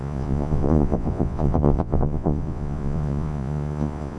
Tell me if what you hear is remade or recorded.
remade